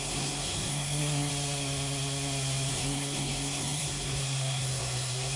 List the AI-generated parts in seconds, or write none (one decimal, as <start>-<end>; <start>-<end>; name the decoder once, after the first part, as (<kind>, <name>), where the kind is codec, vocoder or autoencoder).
0.0-1.3 (codec, SNAC); 2.7-5.4